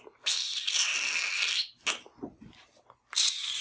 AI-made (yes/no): no